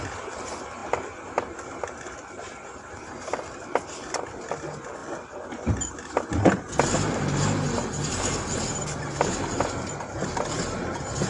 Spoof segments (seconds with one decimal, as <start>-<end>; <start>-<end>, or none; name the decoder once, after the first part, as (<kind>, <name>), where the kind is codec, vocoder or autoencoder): none